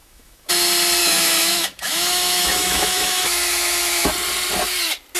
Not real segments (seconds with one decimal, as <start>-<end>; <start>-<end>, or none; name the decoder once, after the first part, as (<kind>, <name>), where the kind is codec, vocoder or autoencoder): 0.0-0.5 (autoencoder, DAC-VAE); 1.0-4.1